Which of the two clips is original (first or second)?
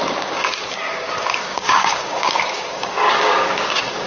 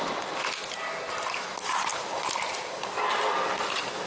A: second